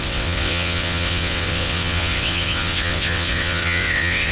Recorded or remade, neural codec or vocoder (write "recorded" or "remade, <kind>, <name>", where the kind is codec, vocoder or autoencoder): remade, vocoder, WaveNeXt